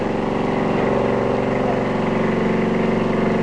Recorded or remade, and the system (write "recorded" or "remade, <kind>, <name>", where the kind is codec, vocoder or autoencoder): recorded